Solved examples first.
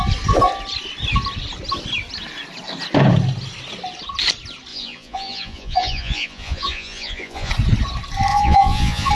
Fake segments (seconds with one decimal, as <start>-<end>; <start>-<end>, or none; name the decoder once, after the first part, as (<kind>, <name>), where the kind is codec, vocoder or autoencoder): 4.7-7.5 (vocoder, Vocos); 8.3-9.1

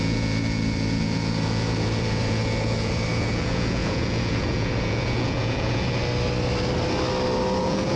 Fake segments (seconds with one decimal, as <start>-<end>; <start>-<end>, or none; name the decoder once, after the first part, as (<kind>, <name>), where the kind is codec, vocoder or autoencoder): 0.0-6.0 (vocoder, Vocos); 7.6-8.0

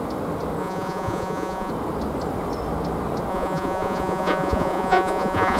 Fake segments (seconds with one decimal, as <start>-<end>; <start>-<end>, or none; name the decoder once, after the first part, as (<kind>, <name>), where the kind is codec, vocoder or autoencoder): 0.6-1.7 (vocoder, Vocos); 3.3-5.6

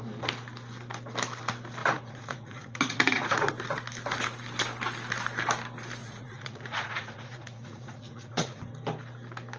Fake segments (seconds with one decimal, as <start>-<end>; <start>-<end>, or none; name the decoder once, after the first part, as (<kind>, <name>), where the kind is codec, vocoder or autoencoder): 1.8-3.5 (vocoder, Vocos); 6.0-8.6